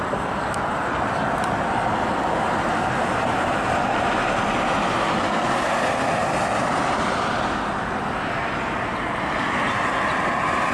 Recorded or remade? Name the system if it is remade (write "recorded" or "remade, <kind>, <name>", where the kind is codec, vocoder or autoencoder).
recorded